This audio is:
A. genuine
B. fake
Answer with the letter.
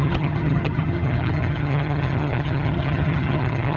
B